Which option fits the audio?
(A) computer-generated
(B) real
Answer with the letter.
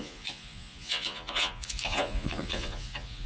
A